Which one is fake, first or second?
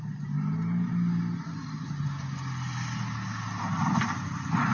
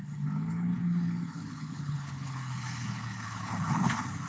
second